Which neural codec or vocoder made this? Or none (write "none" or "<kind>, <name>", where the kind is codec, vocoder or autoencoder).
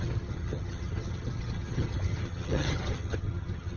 vocoder, HiFi-GAN